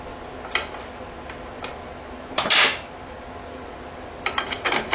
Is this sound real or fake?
real